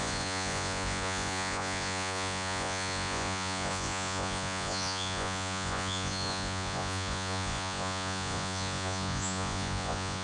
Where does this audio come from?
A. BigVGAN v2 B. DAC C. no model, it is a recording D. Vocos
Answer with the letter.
D